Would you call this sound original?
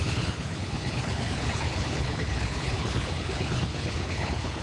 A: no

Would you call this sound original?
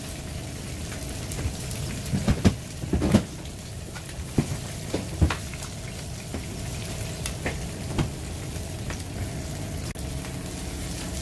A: yes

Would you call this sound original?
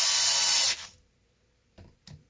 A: yes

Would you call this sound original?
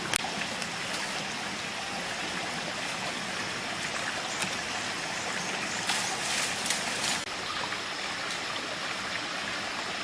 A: yes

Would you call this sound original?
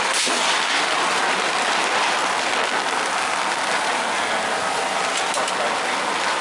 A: yes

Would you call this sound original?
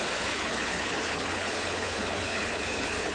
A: no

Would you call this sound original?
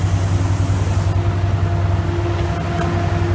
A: yes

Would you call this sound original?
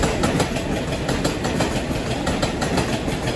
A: yes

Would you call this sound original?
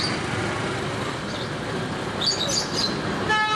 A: yes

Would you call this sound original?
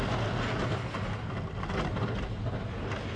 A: yes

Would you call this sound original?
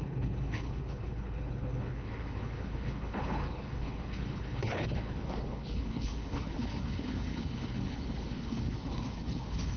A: no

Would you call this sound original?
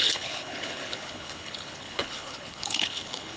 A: no